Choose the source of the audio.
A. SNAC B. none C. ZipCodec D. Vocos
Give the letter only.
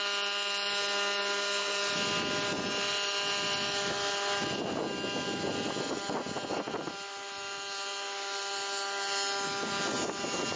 B